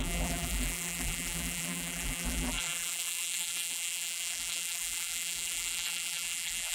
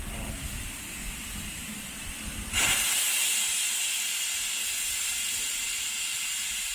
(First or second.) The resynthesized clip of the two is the first